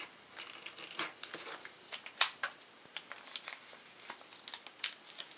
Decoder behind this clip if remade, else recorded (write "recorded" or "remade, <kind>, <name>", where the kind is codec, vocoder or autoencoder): recorded